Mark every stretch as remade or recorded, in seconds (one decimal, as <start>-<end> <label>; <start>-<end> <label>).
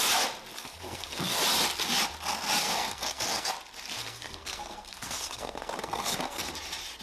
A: 0.0-0.6 recorded; 0.6-1.4 remade; 1.4-2.6 recorded; 2.6-3.5 remade; 3.5-4.0 recorded; 4.0-6.5 remade; 6.5-7.0 recorded